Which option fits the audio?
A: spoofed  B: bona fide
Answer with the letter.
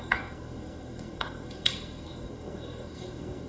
A